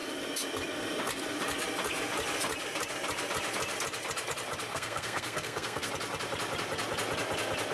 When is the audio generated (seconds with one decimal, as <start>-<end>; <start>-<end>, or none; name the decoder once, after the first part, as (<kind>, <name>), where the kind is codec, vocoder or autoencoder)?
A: 4.7-5.9 (codec, SNAC)

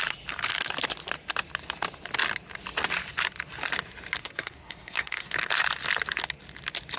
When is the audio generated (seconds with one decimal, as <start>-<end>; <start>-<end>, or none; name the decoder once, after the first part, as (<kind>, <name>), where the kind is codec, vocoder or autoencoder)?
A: 4.2-5.3 (codec, SNAC)

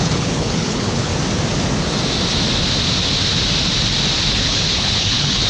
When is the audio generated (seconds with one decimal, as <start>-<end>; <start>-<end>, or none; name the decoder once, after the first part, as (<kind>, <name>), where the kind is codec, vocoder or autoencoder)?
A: 0.0-1.1 (codec, HILCodec); 4.3-5.5

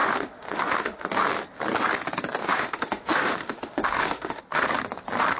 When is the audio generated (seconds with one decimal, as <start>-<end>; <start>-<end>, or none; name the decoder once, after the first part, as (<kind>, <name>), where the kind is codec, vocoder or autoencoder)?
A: 0.0-1.1 (autoencoder, DAC-VAE); 2.4-4.4

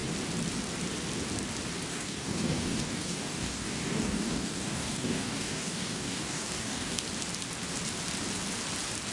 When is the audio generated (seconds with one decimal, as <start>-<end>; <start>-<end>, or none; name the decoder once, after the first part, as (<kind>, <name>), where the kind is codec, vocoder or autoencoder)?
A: 1.9-7.0 (codec, DAC)

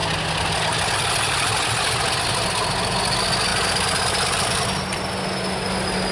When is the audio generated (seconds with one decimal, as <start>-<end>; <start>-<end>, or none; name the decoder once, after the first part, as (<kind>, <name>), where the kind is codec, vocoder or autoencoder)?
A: none